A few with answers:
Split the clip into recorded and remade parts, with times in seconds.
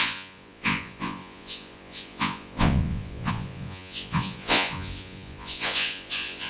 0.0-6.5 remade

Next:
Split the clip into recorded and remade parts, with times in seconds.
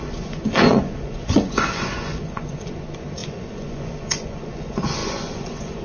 0.0-5.8 remade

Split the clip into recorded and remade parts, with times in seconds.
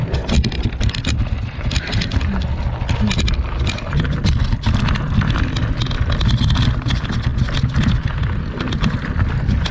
0.0-9.7 recorded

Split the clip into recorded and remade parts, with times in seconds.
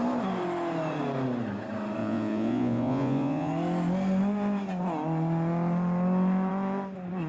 0.0-2.0 recorded; 2.0-3.5 remade; 3.5-7.3 recorded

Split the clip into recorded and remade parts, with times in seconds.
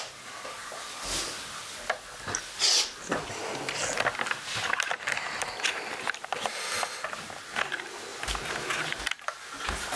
0.0-10.0 recorded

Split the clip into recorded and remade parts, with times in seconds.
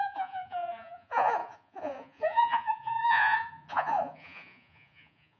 0.0-5.4 remade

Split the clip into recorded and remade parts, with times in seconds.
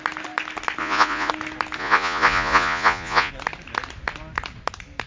0.0-0.8 recorded; 0.8-1.3 remade; 1.3-1.8 recorded; 1.8-3.3 remade; 3.3-5.1 recorded